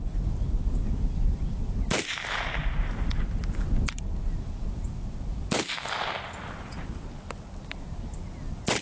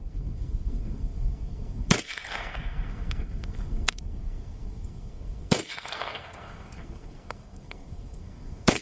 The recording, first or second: first